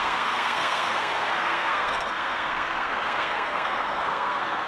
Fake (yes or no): yes